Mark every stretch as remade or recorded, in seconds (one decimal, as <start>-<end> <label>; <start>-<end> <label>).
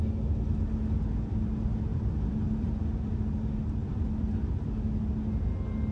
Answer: 0.0-1.9 recorded; 1.9-3.2 remade; 3.2-3.8 recorded; 3.8-4.5 remade; 4.5-5.9 recorded